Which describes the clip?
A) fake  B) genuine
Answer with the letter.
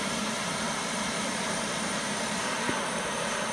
A